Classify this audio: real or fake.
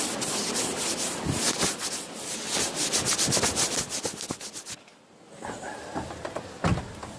real